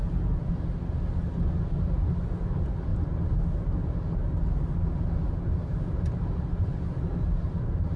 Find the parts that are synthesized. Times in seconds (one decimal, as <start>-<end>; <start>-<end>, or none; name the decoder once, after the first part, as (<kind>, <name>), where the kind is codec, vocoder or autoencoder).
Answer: none